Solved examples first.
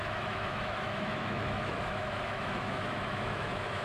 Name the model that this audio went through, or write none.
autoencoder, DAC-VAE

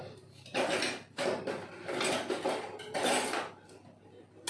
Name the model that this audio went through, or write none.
none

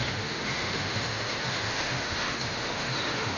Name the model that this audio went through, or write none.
autoencoder, DAC-VAE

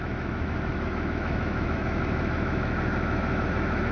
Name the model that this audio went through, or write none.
autoencoder, DAC-VAE